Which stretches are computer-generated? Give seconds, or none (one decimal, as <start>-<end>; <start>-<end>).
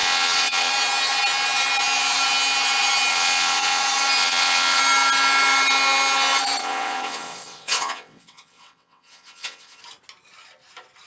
0.0-0.7; 3.1-3.8; 4.2-4.8; 6.6-9.8